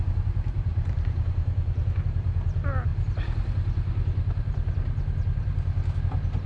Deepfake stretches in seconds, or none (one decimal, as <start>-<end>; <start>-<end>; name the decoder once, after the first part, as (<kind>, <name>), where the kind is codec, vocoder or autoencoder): 0.7-2.0 (vocoder, BigVGAN v2)